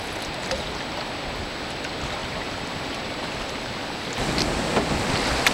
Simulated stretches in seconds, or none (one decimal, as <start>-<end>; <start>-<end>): 2.2-4.5